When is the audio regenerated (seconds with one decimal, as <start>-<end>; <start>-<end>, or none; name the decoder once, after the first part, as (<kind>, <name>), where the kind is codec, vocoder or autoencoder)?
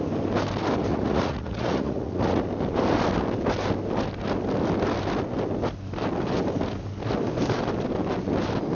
0.9-2.4 (vocoder, Vocos)